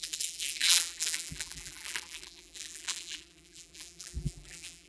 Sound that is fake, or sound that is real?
fake